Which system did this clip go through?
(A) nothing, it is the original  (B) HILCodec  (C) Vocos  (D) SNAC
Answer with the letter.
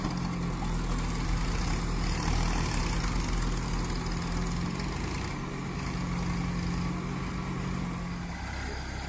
A